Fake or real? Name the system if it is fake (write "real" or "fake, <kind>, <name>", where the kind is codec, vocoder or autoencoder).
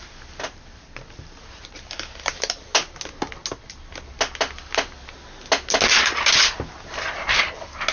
real